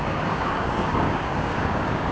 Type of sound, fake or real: fake